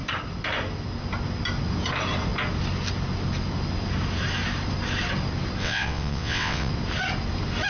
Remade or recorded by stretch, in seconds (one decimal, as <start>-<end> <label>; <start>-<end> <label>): 0.0-5.6 recorded; 5.6-6.7 remade; 6.7-7.7 recorded